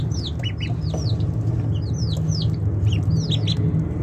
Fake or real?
real